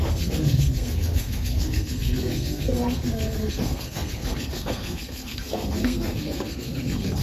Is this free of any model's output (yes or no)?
no